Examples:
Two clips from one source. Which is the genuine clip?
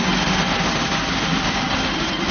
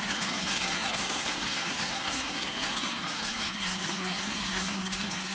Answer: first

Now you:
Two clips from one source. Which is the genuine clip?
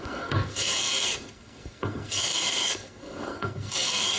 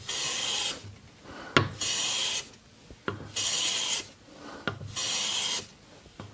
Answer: second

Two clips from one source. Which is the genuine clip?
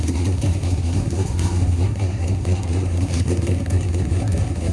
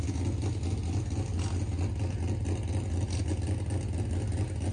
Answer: second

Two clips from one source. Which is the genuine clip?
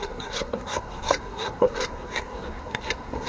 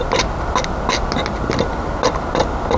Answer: second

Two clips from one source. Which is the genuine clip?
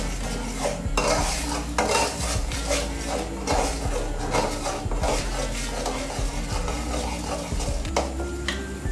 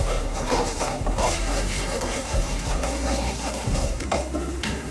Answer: first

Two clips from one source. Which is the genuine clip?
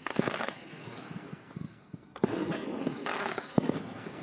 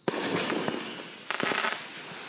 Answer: second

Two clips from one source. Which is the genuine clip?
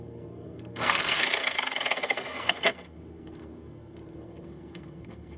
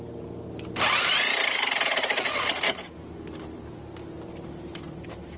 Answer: second